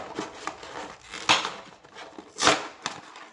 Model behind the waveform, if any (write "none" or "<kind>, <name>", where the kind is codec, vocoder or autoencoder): none